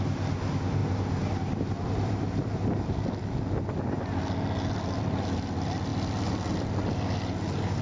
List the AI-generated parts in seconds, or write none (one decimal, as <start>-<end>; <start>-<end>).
none